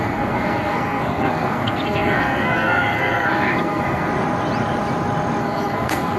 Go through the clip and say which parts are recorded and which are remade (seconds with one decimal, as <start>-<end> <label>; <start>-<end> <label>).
0.0-4.1 remade; 4.1-5.4 recorded; 5.4-6.2 remade